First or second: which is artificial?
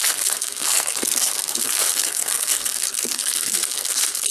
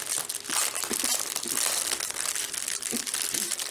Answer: first